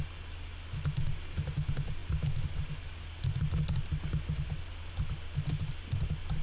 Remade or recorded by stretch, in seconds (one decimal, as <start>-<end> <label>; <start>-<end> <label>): 0.0-6.4 recorded